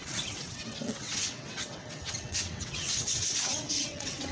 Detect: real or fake fake